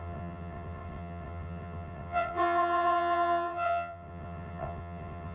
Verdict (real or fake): fake